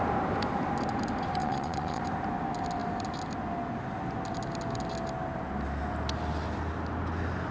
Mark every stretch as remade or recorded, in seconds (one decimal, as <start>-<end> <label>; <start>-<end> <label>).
0.0-1.4 recorded; 1.4-2.0 remade; 2.0-7.5 recorded